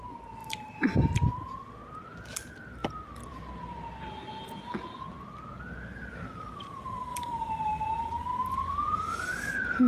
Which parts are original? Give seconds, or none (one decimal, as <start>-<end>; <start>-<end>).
0.0-0.4; 1.5-2.8; 3.3-7.1